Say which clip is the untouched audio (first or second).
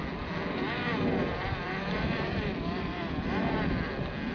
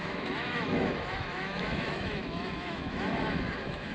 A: first